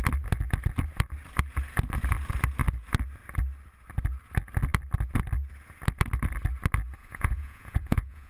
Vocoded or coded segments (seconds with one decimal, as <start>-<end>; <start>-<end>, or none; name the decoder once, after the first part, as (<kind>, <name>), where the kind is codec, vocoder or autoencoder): 7.0-8.3 (vocoder, Vocos)